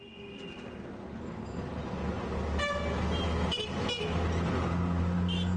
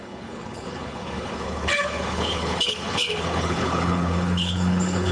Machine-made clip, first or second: second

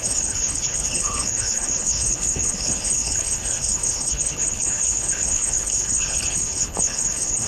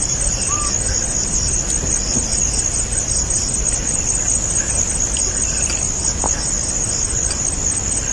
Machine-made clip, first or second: first